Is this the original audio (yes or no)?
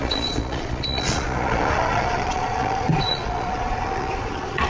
no